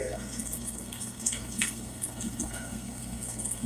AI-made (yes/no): yes